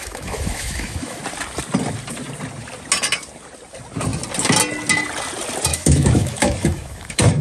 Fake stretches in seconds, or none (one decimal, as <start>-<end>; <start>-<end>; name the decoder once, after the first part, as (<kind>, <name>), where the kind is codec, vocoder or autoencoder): 0.0-1.2 (autoencoder, DAC-VAE); 5.7-7.4